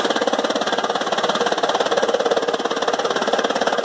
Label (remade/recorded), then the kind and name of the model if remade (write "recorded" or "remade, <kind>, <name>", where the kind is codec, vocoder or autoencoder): recorded